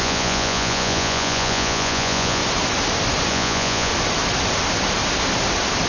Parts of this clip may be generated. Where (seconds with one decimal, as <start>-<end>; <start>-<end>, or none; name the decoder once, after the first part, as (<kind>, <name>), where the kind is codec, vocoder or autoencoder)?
0.0-2.4 (vocoder, Vocos); 3.3-3.9